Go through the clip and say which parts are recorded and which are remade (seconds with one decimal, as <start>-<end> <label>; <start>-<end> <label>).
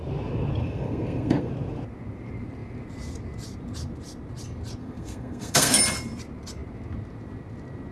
0.0-0.6 recorded; 0.6-1.5 remade; 1.5-4.8 recorded; 4.8-5.8 remade; 5.8-7.9 recorded